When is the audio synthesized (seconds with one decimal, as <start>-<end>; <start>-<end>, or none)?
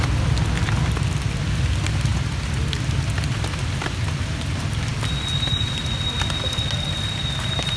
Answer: none